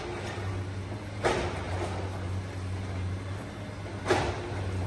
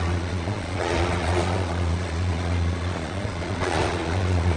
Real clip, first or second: first